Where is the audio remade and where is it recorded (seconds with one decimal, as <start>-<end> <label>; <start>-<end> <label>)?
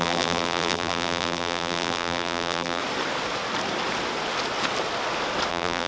0.0-2.8 remade; 2.8-5.5 recorded; 5.5-5.9 remade